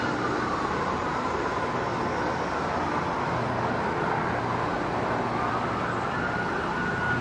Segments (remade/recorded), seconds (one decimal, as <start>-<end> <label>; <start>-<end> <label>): 0.0-1.9 remade; 1.9-6.2 recorded; 6.2-7.2 remade